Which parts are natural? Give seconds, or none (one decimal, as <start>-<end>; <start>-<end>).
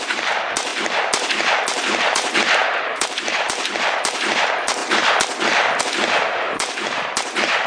0.7-1.6; 4.8-5.8